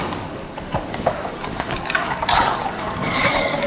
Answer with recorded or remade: remade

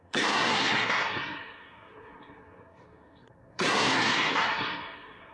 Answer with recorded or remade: remade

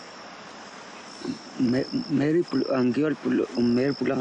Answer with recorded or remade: recorded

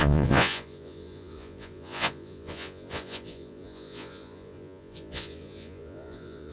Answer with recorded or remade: remade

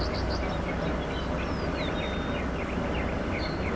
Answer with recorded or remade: recorded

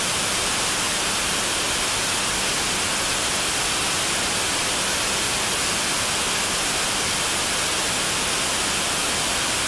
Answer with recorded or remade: recorded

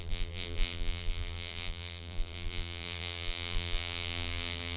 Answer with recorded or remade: remade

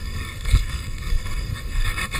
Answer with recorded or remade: remade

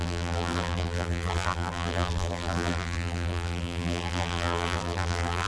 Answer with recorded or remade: remade